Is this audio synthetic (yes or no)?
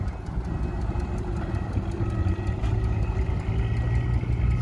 no